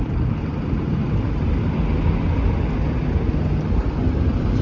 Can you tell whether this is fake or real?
real